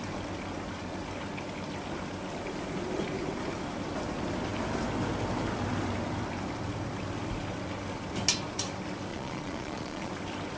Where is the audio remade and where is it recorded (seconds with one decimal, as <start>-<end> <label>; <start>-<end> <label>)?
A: 0.0-9.1 recorded; 9.1-10.1 remade; 10.1-10.6 recorded